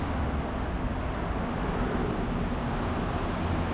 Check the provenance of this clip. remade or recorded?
recorded